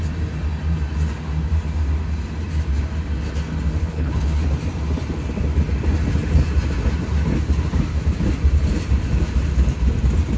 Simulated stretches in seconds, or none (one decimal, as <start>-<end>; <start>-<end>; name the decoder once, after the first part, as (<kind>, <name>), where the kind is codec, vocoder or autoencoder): 3.8-4.4 (codec, HILCodec)